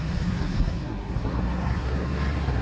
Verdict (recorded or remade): remade